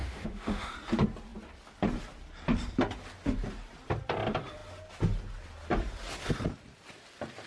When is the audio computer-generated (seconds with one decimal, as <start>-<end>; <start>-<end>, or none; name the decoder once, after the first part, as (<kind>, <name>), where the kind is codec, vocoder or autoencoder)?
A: 0.0-0.7 (autoencoder, DAC-VAE)